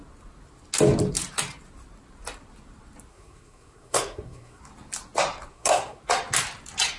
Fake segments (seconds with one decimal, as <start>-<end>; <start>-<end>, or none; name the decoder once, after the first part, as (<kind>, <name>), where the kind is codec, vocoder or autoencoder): 3.1-4.6 (codec, SNAC); 5.5-6.0